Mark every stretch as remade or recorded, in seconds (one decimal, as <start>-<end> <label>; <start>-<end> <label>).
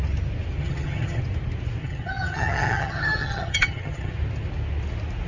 0.0-0.6 recorded; 0.6-1.2 remade; 1.2-1.8 recorded; 1.8-4.1 remade; 4.1-5.3 recorded